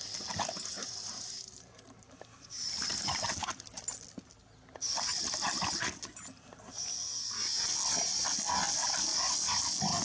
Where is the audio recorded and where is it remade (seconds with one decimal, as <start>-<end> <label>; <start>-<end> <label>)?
0.0-0.7 recorded; 0.7-2.9 remade; 2.9-10.0 recorded